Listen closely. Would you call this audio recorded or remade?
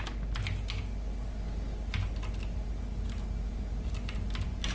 recorded